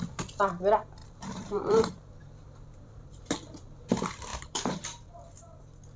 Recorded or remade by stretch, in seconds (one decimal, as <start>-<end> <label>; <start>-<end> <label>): 0.0-1.0 recorded; 1.0-3.9 remade; 3.9-4.3 recorded; 4.3-5.6 remade; 5.6-6.0 recorded